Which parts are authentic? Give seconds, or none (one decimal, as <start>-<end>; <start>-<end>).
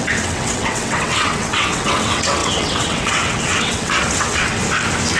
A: 4.6-5.2